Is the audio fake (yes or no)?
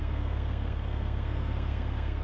yes